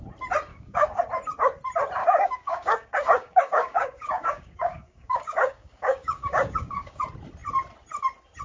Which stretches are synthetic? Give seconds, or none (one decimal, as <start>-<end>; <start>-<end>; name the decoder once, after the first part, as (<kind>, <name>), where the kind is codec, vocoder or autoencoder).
0.5-1.0 (codec, DAC); 2.0-7.0